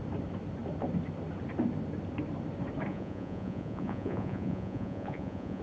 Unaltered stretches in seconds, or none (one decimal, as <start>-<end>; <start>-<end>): 0.0-2.9